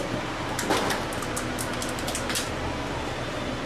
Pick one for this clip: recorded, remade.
recorded